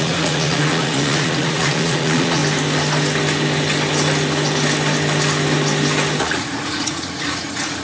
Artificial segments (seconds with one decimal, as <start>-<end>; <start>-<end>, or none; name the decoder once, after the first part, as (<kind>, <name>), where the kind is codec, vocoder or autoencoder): 0.0-2.4 (vocoder, Vocos); 6.2-7.8